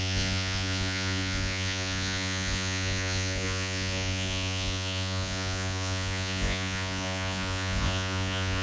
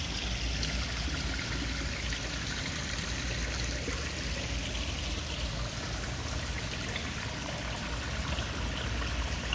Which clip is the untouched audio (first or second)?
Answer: second